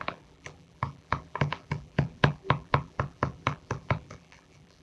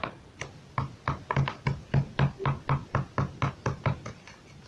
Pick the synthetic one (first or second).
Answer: first